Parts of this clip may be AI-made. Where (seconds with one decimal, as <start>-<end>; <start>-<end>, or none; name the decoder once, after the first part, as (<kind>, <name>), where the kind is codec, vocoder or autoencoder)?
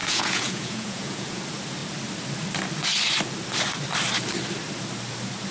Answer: 0.0-1.4 (vocoder, Vocos)